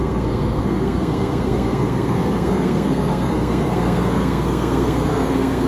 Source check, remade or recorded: remade